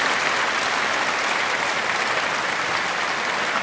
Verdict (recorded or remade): recorded